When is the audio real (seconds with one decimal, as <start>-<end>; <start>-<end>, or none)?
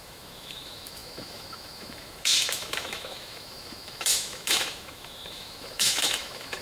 none